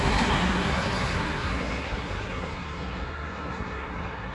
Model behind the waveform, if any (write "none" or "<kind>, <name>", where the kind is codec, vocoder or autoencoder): codec, SNAC